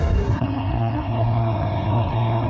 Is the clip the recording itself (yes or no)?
no